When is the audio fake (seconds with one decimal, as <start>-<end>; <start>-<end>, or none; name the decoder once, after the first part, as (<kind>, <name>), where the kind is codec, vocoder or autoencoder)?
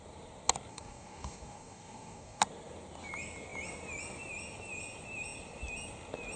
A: 0.7-2.4 (codec, DAC)